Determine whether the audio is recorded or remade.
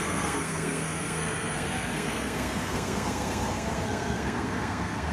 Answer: remade